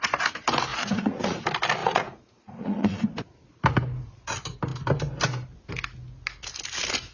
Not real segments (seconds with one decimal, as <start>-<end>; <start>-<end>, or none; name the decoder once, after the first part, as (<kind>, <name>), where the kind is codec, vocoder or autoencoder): 0.7-1.4 (vocoder, Vocos); 1.8-3.0